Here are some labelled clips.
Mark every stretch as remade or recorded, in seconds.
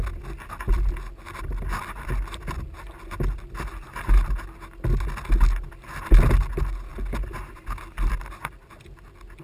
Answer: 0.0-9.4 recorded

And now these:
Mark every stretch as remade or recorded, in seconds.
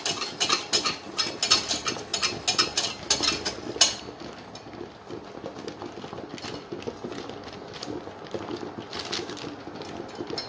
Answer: 0.0-10.5 recorded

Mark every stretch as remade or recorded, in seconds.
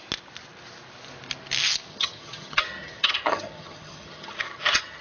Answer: 0.0-1.9 recorded; 1.9-5.0 remade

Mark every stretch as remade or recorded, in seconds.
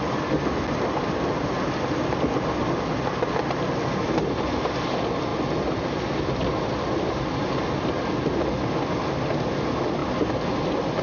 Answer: 0.0-11.0 recorded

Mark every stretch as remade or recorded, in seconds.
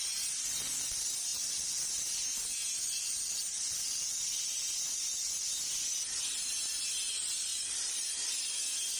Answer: 0.0-7.5 recorded; 7.5-8.4 remade; 8.4-9.0 recorded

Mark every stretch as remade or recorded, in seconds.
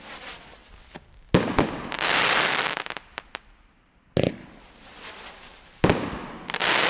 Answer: 0.0-6.9 recorded